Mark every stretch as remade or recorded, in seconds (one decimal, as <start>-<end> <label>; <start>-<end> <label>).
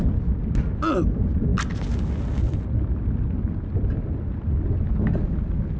0.0-5.8 recorded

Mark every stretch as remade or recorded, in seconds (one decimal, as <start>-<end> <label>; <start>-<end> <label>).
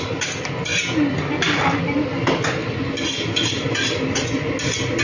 0.0-5.0 recorded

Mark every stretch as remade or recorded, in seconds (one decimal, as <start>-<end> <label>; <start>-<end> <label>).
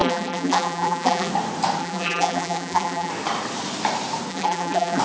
0.0-1.3 remade; 1.3-1.8 recorded; 1.8-3.1 remade; 3.1-4.3 recorded; 4.3-5.0 remade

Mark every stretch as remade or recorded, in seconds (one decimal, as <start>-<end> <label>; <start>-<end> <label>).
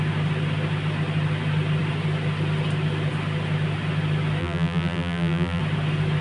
0.0-4.4 recorded; 4.4-5.6 remade; 5.6-6.2 recorded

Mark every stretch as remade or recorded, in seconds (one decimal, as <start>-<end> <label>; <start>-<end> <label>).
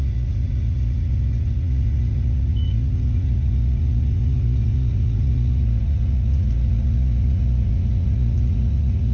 0.0-9.1 remade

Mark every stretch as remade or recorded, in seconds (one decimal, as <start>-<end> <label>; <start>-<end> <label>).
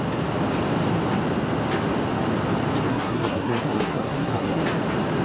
0.0-2.9 recorded; 2.9-4.6 remade; 4.6-5.2 recorded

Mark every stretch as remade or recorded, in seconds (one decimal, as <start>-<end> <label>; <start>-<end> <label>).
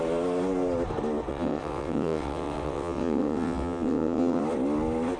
0.0-1.3 recorded; 1.3-4.4 remade; 4.4-5.2 recorded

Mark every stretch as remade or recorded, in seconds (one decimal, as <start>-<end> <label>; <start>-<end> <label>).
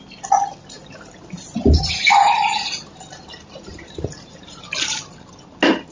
0.0-0.8 recorded; 0.8-2.8 remade; 2.8-3.7 recorded; 3.7-5.3 remade; 5.3-5.9 recorded